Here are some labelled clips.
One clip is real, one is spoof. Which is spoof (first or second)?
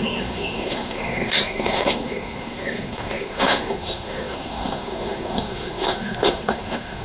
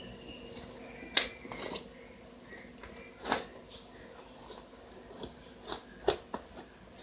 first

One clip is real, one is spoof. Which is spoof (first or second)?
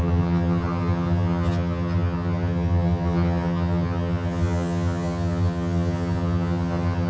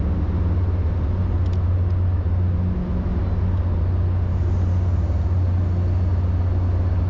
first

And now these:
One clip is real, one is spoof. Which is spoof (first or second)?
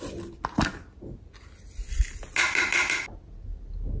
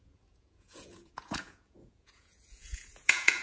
second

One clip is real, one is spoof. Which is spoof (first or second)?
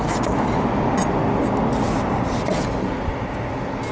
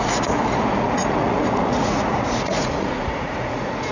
second